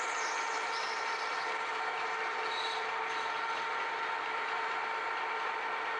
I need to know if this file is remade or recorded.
recorded